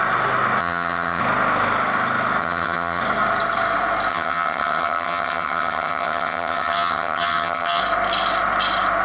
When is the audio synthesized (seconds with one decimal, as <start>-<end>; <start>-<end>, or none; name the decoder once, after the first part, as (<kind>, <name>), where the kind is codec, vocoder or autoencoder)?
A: 0.6-1.2 (vocoder, HiFi-GAN); 2.4-3.0; 4.1-7.8